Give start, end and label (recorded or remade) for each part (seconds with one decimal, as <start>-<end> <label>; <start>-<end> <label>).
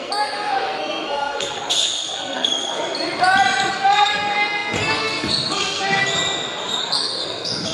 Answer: 0.0-2.8 remade; 2.8-3.7 recorded; 3.7-6.0 remade; 6.0-6.8 recorded; 6.8-7.7 remade